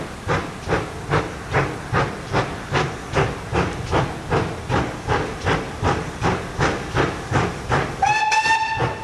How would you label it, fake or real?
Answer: real